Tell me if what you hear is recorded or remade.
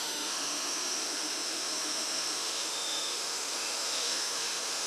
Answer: remade